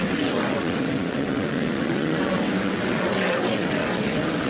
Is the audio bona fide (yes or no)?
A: no